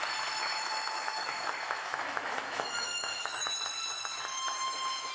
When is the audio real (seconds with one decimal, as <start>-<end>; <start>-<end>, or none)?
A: 0.0-0.4; 3.5-4.3